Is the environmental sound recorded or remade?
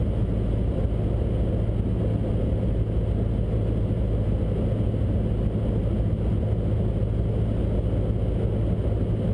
recorded